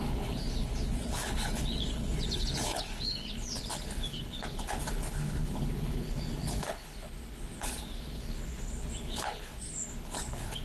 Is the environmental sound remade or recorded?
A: remade